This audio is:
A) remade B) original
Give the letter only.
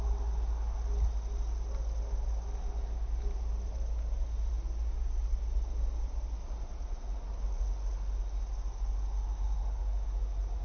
B